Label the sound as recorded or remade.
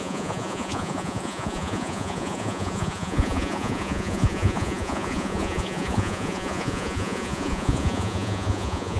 remade